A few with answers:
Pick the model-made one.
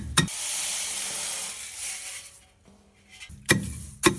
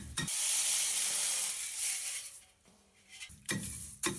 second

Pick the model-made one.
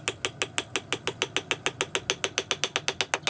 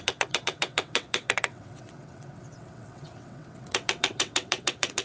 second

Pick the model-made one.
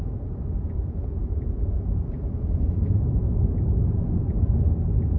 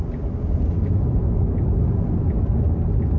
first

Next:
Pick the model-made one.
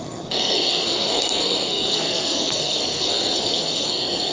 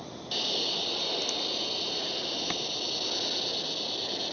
first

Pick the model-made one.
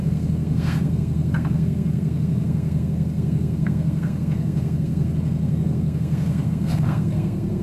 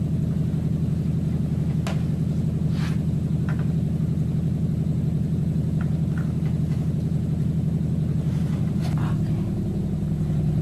first